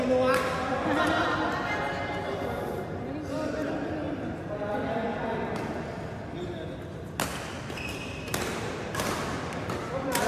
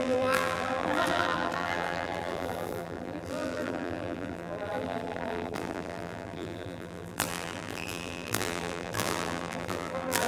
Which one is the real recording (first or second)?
first